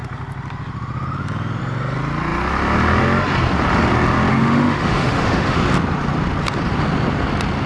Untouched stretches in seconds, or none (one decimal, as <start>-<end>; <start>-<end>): 0.0-4.3; 5.6-7.7

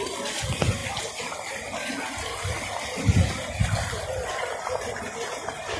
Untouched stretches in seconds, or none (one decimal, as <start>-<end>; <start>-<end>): 0.0-5.8

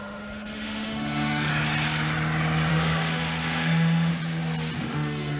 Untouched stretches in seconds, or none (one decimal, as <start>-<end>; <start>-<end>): 1.5-2.7; 4.1-4.8

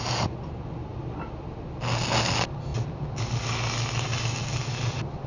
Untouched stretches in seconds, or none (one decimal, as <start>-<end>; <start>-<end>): 0.0-5.3

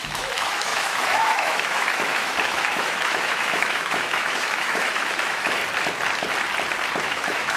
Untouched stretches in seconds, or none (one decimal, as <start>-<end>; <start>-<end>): 5.6-7.0

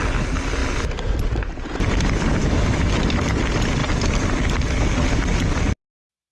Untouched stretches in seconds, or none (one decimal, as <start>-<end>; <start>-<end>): 0.0-2.4; 2.9-6.3

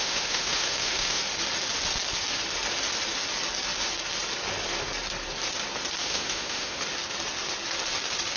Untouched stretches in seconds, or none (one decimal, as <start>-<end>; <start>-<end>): 1.2-6.0; 6.8-8.4

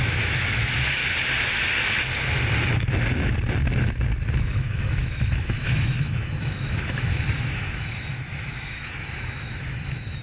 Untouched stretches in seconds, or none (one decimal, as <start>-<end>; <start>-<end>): 1.0-4.4